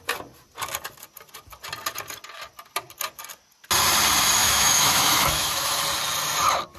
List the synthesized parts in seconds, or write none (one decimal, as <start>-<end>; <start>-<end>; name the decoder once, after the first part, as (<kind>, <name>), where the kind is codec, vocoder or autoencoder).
4.4-5.7 (autoencoder, DAC-VAE)